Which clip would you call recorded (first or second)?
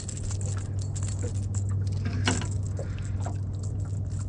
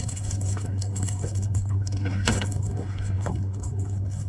first